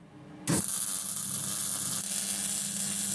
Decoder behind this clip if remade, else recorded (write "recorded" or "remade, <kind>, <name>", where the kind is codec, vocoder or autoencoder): recorded